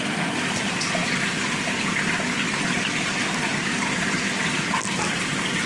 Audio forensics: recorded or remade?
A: recorded